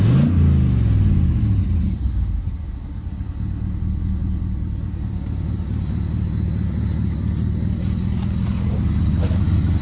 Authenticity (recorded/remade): recorded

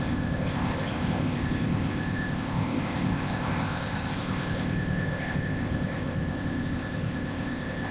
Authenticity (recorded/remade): remade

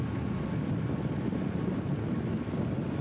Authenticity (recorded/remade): recorded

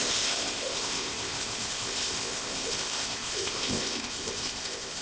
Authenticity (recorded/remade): remade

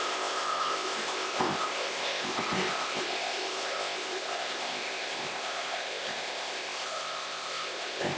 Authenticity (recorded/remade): remade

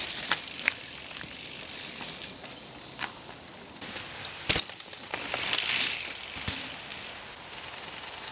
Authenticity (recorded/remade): recorded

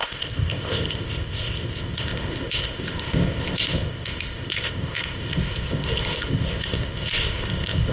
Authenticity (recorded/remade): remade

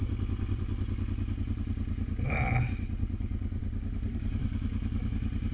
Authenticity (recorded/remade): recorded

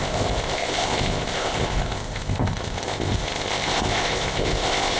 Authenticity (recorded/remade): remade